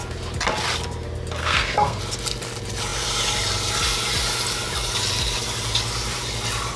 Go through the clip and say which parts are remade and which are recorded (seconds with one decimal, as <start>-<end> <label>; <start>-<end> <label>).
0.0-1.4 recorded; 1.4-2.0 remade; 2.0-6.8 recorded

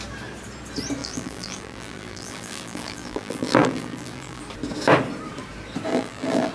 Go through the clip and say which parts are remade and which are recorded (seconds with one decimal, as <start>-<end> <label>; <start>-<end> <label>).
0.0-1.0 recorded; 1.0-4.4 remade; 4.4-5.9 recorded; 5.9-6.5 remade

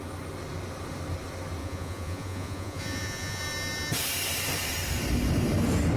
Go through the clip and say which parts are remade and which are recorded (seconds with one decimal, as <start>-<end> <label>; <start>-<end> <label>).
0.0-1.6 recorded; 1.6-3.4 remade; 3.4-6.0 recorded